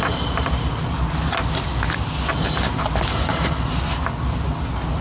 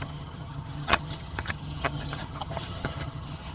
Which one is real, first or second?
first